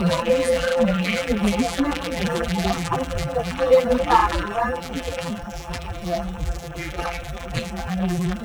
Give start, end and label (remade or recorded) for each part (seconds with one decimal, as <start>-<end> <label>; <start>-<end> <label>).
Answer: 0.0-8.4 remade